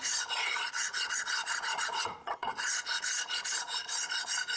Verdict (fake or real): fake